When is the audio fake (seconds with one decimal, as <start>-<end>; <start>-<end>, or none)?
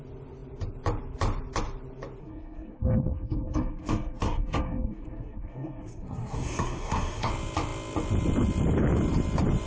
2.2-7.3